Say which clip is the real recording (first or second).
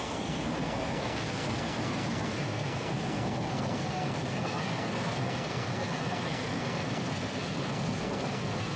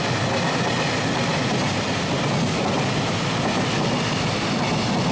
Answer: second